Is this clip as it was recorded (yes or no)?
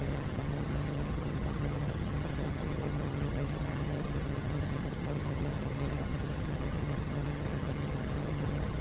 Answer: no